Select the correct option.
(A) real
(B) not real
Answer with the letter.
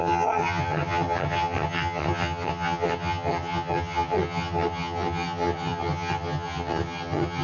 B